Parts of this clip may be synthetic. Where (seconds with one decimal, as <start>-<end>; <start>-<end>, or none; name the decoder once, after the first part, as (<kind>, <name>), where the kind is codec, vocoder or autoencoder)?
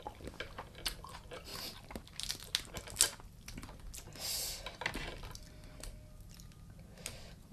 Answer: none